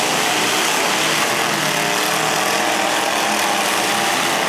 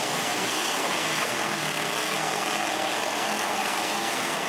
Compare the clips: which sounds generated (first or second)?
second